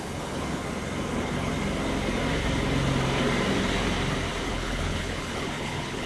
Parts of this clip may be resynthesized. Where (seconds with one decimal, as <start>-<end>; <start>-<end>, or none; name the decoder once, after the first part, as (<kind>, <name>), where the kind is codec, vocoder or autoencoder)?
0.0-0.6 (codec, HILCodec); 1.1-1.5; 4.5-6.1